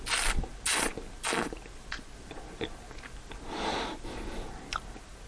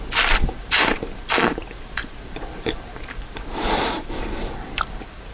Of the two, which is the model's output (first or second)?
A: second